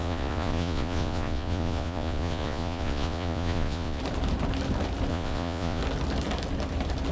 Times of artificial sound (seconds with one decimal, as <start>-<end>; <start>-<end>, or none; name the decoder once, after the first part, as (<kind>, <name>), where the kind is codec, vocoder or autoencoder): 0.0-4.0 (vocoder, Vocos); 5.1-5.8